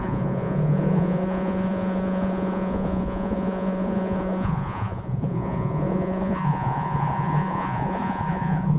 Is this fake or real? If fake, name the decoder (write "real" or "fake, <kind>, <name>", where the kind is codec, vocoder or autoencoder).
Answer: fake, vocoder, Vocos